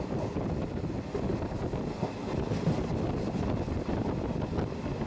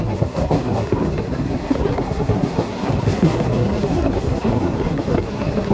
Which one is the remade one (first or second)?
second